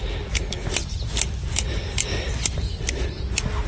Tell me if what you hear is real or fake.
real